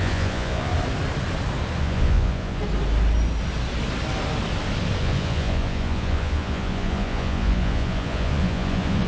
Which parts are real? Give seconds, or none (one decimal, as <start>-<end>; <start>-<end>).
0.7-1.8; 2.6-5.0